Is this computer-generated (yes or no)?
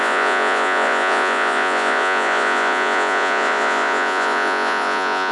yes